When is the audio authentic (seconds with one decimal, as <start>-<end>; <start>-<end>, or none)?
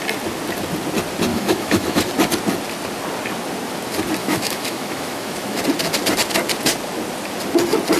0.0-1.3; 2.1-4.2; 5.6-8.0